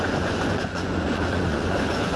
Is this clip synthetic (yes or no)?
yes